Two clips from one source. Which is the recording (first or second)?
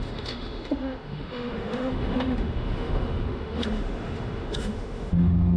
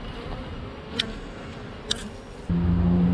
second